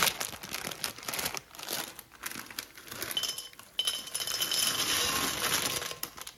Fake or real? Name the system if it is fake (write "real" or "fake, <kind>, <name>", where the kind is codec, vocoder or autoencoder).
real